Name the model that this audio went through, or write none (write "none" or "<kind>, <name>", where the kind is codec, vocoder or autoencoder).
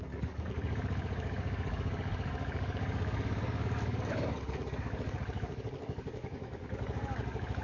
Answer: codec, DAC